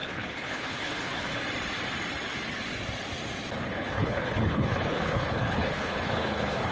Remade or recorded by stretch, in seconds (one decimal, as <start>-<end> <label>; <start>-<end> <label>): 0.0-1.4 remade; 1.4-3.6 recorded; 3.6-6.7 remade